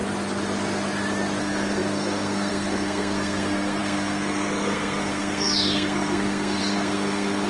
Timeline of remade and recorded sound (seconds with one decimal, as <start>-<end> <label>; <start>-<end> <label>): 0.0-1.4 recorded; 1.4-7.5 remade